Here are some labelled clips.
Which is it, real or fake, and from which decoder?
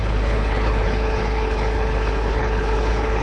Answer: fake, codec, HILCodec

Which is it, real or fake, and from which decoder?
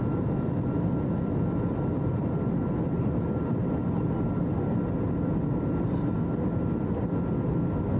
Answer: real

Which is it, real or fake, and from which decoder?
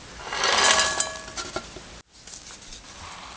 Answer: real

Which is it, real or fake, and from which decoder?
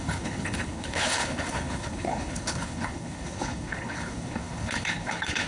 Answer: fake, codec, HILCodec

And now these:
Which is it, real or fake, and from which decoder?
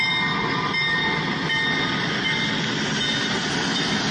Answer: real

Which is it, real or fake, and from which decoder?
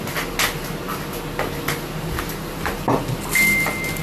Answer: real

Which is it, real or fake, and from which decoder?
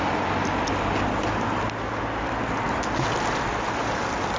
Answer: real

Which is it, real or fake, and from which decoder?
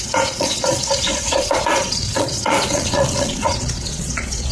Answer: fake, vocoder, Vocos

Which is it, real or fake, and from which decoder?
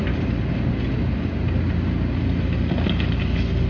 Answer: real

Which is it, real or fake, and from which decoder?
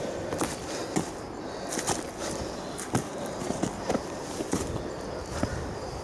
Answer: real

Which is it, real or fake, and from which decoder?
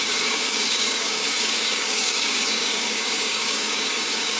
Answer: fake, codec, DAC